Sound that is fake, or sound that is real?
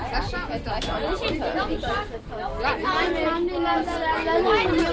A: real